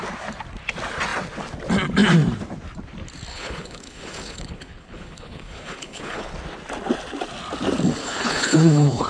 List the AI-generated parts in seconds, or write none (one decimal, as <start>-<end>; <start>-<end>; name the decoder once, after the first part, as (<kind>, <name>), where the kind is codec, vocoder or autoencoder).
3.3-6.3 (codec, HILCodec); 8.0-9.1